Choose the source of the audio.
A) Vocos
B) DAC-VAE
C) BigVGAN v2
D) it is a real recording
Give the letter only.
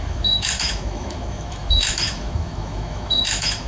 B